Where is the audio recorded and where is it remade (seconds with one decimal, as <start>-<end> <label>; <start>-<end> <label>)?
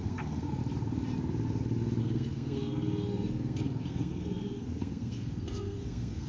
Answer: 0.0-0.6 remade; 0.6-2.0 recorded; 2.0-6.3 remade